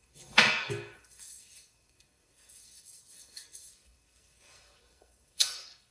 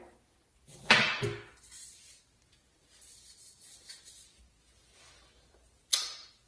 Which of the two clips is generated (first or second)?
first